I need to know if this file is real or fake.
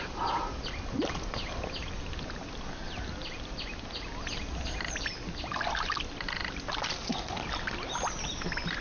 real